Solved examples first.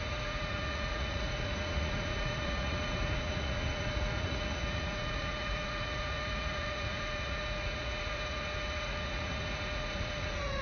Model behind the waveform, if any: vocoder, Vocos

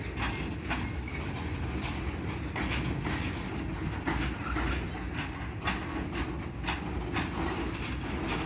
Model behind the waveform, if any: none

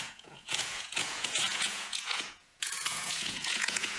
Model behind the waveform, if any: vocoder, Vocos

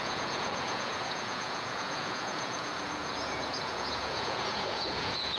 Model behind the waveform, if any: vocoder, Vocos